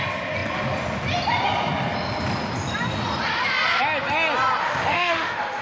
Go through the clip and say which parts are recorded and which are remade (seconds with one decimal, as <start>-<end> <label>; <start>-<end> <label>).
0.0-4.6 recorded; 4.6-5.6 remade